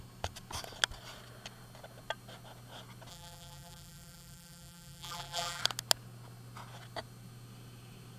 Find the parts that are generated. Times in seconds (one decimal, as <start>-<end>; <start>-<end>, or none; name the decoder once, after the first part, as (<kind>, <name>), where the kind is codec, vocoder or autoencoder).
3.1-5.6 (vocoder, BigVGAN v2)